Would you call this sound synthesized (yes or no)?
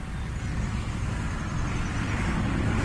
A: no